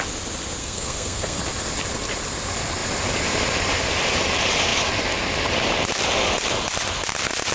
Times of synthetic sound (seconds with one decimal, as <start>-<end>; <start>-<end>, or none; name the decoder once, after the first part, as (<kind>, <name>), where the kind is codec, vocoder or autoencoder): 0.6-1.4 (codec, SNAC)